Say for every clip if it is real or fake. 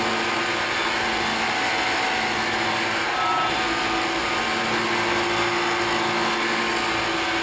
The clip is real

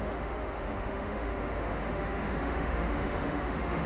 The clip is fake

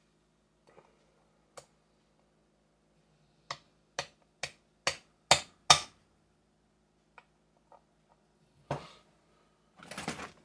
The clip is real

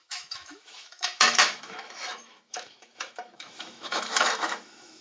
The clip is fake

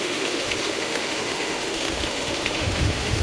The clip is fake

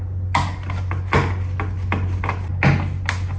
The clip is real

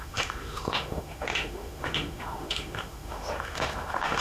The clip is fake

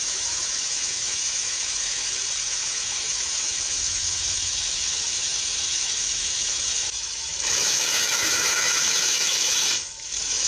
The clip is fake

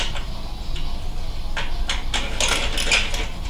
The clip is real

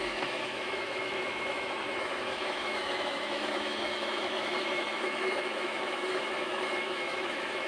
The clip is fake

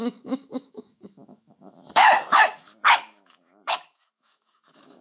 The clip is fake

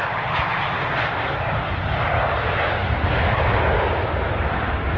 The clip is real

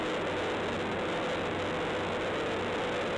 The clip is real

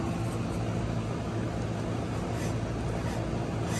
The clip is real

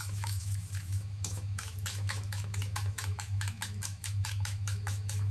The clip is fake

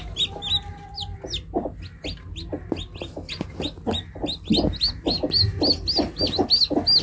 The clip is real